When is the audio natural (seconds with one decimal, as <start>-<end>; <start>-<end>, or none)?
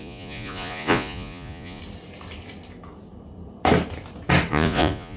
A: 1.8-4.5